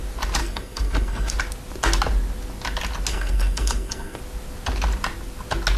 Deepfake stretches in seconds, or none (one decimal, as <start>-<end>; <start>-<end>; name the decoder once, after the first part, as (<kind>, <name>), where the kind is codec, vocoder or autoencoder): 0.4-1.3 (codec, SNAC); 3.1-4.2